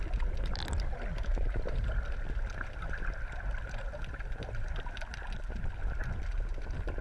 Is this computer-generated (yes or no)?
no